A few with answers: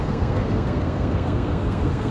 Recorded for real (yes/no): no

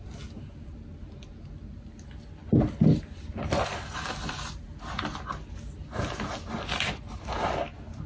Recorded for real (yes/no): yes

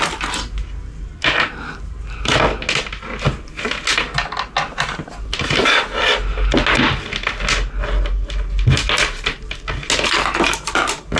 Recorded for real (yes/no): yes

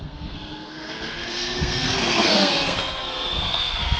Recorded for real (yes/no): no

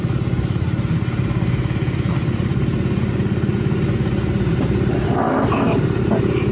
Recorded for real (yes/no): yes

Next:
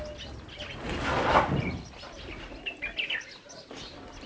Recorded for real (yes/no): yes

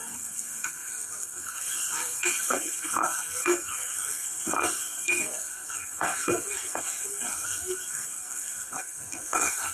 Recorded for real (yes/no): no